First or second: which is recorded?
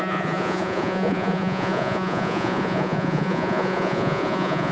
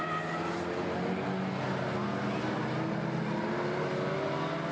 second